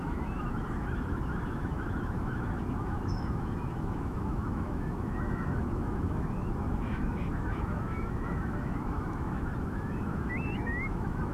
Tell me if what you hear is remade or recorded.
remade